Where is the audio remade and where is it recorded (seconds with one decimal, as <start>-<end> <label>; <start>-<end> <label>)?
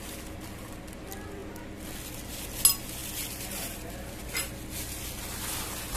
0.0-3.0 recorded; 3.0-4.2 remade; 4.2-6.0 recorded